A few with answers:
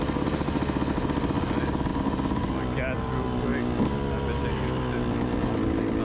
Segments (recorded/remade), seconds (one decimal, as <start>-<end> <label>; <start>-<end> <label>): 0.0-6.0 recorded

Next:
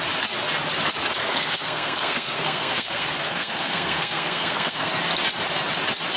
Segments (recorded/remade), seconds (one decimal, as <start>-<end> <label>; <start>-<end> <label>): 0.0-1.2 recorded; 1.2-4.9 remade; 4.9-6.2 recorded

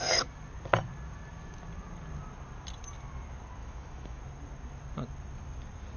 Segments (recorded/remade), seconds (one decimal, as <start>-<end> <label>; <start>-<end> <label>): 0.0-3.6 recorded; 3.6-4.2 remade; 4.2-6.0 recorded

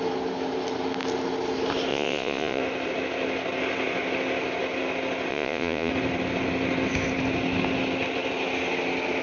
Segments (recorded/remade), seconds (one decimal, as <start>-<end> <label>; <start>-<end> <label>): 0.0-1.9 recorded; 1.9-2.6 remade; 2.6-5.3 recorded; 5.3-5.9 remade; 5.9-9.2 recorded

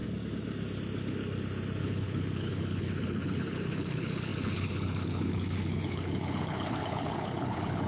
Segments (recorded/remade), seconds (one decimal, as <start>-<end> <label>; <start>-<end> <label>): 0.0-1.8 recorded; 1.8-7.9 remade

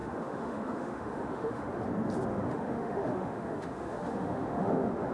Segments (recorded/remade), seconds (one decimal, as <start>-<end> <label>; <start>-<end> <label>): 0.0-1.7 remade; 1.7-2.3 recorded; 2.3-5.1 remade